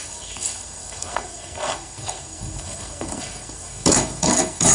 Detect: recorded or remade remade